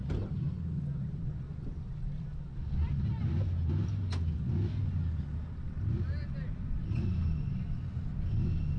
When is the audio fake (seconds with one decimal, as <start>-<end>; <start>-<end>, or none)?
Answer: none